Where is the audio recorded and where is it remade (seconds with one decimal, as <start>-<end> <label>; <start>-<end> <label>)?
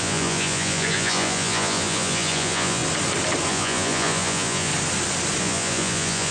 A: 0.0-2.8 remade; 2.8-3.5 recorded; 3.5-4.7 remade; 4.7-5.4 recorded; 5.4-6.3 remade